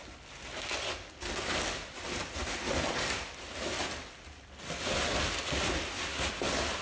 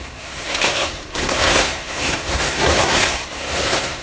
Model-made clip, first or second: second